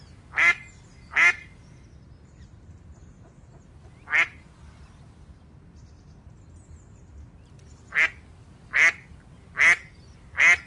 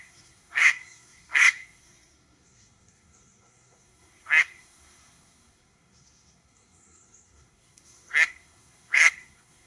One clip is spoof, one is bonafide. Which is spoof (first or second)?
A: second